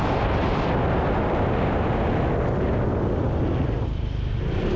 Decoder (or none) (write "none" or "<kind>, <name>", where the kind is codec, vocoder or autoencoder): none